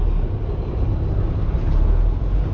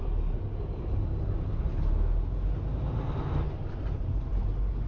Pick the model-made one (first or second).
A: first